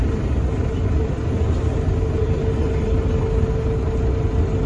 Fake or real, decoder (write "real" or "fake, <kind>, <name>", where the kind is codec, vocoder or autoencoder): real